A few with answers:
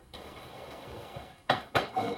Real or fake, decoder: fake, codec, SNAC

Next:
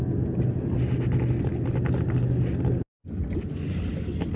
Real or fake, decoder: real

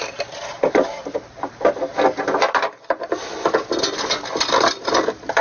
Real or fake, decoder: real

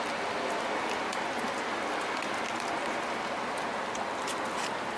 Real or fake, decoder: real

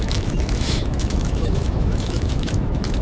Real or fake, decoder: fake, autoencoder, DAC-VAE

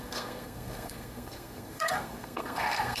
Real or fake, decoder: fake, codec, SNAC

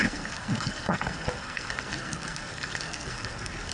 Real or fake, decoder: fake, codec, SNAC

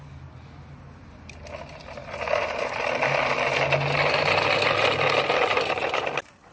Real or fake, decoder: real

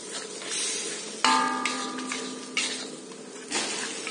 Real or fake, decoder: real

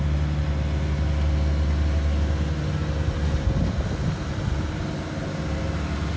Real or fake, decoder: real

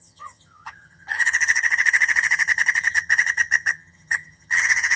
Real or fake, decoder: fake, vocoder, HiFi-GAN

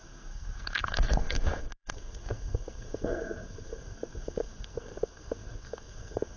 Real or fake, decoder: fake, codec, SNAC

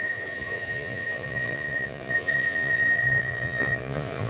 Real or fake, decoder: fake, vocoder, Vocos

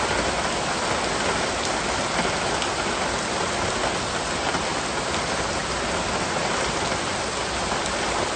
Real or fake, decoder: real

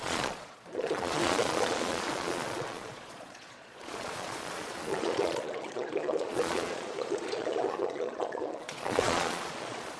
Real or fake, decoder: fake, vocoder, Vocos